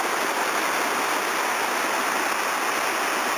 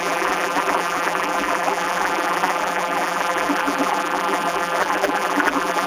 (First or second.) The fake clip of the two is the second